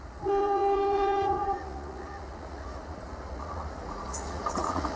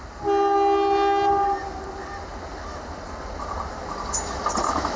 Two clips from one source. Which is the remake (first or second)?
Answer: first